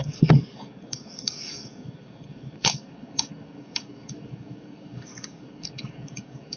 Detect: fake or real fake